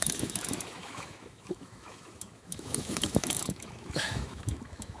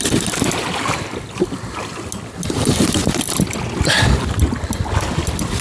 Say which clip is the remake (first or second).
first